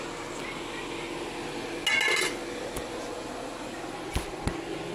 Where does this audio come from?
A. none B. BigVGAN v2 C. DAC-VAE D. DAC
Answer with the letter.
A